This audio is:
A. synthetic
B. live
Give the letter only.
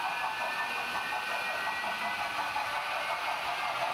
B